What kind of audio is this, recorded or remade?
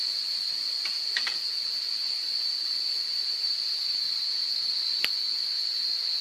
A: remade